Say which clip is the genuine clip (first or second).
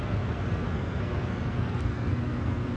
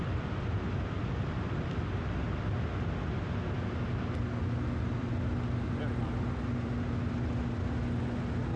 second